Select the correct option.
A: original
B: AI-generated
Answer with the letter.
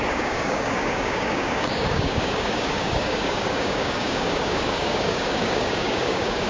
B